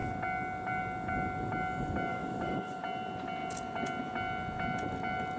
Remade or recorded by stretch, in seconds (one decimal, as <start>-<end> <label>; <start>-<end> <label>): 0.0-2.1 recorded; 2.1-2.8 remade; 2.8-5.4 recorded